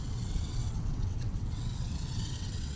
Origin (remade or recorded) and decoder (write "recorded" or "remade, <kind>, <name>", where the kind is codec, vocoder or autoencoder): remade, vocoder, WaveNeXt